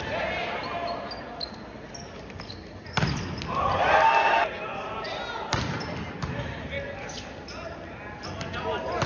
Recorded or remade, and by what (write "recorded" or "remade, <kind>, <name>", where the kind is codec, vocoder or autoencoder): recorded